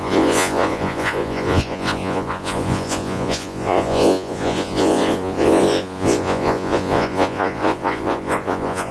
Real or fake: fake